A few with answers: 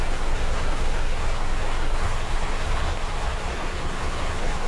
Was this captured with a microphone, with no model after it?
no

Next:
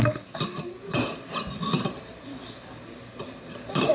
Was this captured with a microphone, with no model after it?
yes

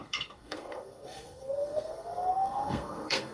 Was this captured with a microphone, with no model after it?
no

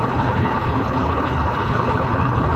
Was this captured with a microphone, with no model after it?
no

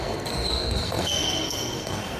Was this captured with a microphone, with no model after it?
no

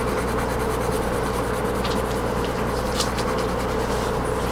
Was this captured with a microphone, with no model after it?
yes